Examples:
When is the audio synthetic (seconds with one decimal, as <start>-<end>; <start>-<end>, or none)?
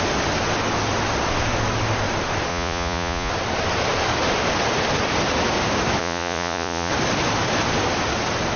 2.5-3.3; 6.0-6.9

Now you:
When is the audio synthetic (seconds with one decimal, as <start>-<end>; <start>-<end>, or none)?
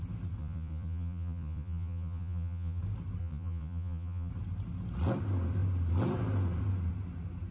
0.4-2.8; 3.2-4.3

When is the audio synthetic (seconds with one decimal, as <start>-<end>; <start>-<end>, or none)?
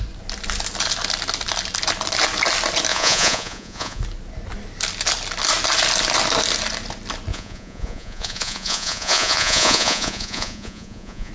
2.9-4.0; 7.3-11.3